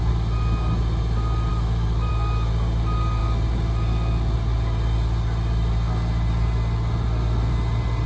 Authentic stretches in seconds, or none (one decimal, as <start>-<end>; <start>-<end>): 0.0-1.5; 2.1-8.1